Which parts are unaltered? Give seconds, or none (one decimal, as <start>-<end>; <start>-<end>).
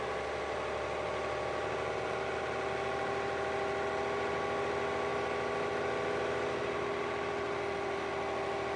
0.0-5.1; 5.8-8.8